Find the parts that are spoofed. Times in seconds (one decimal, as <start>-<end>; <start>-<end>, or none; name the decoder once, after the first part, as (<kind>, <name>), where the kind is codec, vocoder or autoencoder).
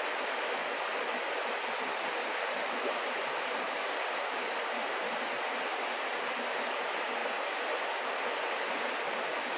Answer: none